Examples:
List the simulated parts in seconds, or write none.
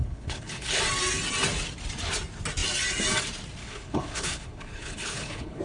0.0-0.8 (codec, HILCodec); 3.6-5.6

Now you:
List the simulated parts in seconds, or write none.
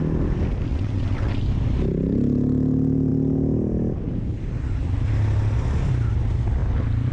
0.7-1.4 (vocoder, WaveNeXt)